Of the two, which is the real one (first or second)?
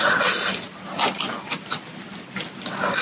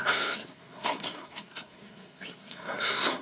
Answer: first